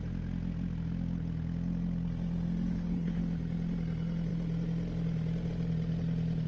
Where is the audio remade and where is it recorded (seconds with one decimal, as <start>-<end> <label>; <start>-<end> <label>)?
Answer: 0.0-2.7 recorded; 2.7-3.2 remade; 3.2-6.5 recorded